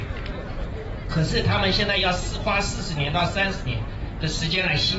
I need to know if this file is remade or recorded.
recorded